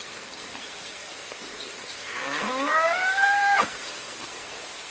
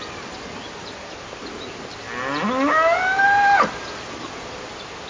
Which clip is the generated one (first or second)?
first